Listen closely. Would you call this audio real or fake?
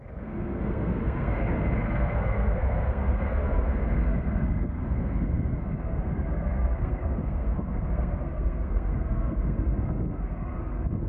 fake